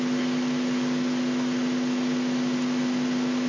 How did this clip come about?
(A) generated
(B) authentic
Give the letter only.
B